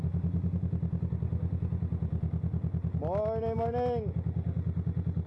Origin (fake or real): real